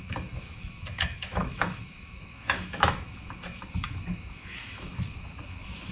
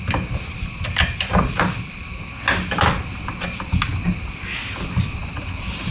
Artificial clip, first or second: first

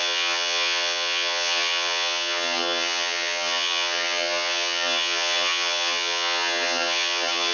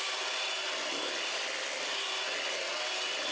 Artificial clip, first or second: first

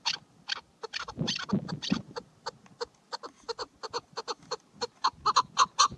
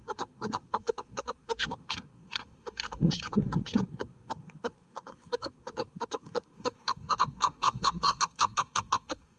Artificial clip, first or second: second